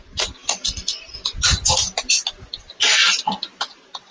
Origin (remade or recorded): recorded